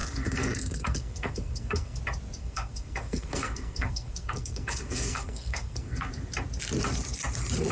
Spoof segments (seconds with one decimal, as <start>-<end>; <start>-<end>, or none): 0.0-2.0; 2.4-6.1

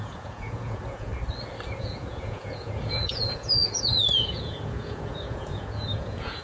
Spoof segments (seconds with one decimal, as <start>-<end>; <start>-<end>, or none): 0.0-1.1; 1.8-6.4

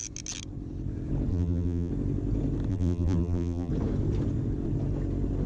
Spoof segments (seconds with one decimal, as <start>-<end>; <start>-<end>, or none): 1.3-1.9; 2.7-3.7